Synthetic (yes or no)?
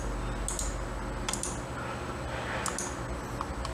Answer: no